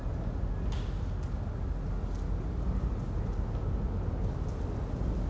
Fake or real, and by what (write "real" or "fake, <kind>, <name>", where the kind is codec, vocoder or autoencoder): real